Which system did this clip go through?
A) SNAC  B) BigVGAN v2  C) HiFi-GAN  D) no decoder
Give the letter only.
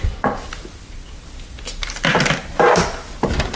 D